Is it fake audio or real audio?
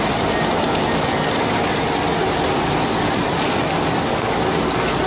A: real